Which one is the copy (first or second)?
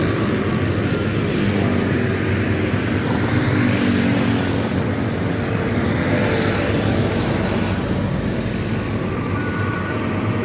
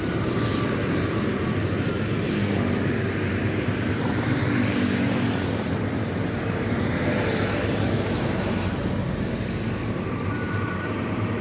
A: second